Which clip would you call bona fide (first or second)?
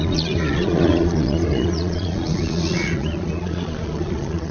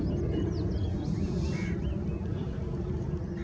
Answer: second